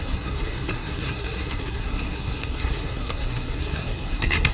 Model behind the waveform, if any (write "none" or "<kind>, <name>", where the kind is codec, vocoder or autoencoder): codec, SNAC